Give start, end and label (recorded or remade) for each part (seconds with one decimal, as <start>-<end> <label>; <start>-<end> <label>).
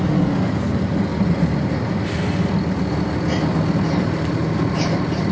0.0-5.3 recorded